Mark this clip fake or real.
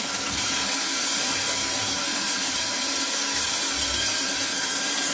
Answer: fake